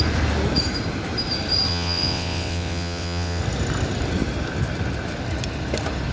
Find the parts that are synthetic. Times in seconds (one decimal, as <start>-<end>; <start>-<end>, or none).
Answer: 1.7-3.4